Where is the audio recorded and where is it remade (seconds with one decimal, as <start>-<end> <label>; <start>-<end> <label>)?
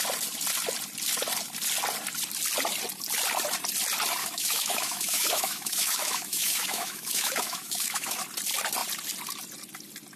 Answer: 0.0-4.2 recorded; 4.2-8.2 remade; 8.2-10.2 recorded